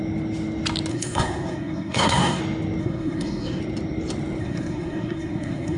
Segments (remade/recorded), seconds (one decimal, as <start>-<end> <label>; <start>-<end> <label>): 0.0-0.9 recorded; 0.9-2.4 remade; 2.4-2.8 recorded; 2.8-3.6 remade; 3.6-4.4 recorded; 4.4-5.8 remade